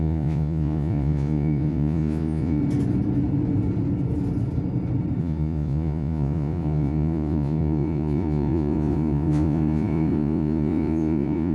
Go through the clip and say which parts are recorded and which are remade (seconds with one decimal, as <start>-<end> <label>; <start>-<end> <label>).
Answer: 0.0-2.6 remade; 2.6-5.2 recorded; 5.2-11.5 remade